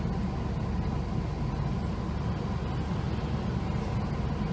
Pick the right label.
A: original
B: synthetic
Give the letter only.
A